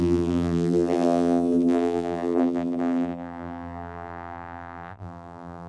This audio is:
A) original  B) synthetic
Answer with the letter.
B